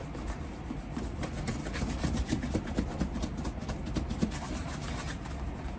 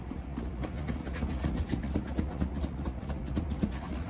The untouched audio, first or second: first